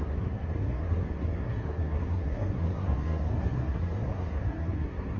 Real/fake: fake